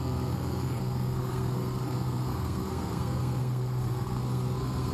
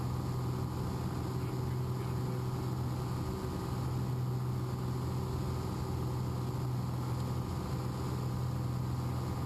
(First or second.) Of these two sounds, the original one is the second